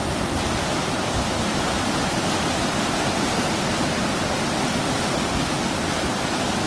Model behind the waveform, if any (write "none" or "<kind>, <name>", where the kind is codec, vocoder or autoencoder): none